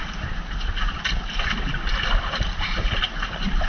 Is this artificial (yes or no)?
no